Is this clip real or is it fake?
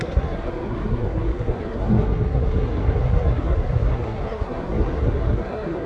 fake